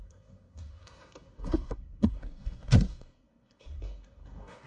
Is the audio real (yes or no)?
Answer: no